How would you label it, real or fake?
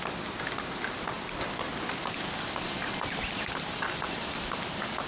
real